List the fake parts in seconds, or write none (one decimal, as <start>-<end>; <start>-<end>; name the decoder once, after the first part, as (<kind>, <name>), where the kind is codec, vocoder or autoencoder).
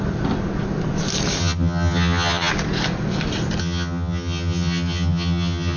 1.4-2.5 (vocoder, HiFi-GAN); 3.6-5.8